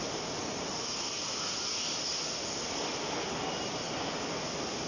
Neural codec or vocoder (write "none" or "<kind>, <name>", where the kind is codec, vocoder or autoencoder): none